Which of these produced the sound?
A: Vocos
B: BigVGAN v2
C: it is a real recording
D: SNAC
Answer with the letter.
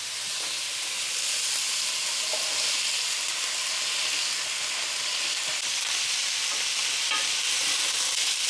C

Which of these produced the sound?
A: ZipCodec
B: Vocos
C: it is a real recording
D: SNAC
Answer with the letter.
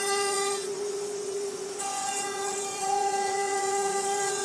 B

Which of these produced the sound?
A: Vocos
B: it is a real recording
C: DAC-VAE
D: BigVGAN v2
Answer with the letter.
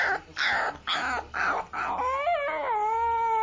B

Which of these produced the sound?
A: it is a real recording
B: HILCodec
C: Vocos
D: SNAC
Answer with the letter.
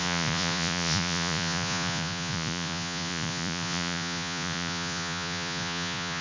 C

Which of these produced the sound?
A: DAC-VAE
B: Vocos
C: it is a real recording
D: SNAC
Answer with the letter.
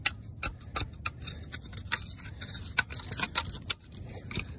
C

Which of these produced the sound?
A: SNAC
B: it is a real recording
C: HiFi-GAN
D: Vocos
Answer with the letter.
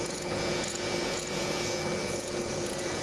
D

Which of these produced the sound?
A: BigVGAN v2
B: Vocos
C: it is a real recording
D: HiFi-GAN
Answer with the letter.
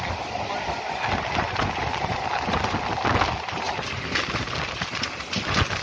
C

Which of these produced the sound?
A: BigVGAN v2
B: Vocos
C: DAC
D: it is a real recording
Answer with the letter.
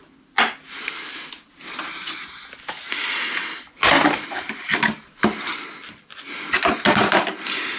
D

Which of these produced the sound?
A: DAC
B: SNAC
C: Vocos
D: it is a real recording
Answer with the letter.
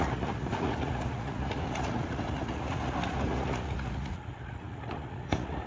C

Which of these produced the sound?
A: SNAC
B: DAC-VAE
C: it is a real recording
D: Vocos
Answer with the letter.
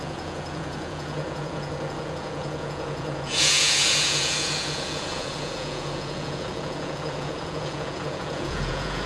D